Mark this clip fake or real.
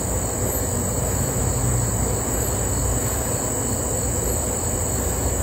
real